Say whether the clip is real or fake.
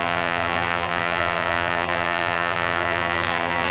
fake